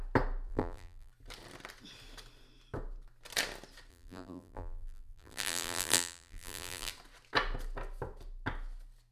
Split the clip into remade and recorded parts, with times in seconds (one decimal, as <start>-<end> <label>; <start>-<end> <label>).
0.0-0.5 recorded; 0.5-1.1 remade; 1.1-3.9 recorded; 3.9-6.9 remade; 6.9-9.1 recorded